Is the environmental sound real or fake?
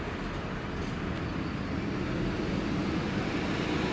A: real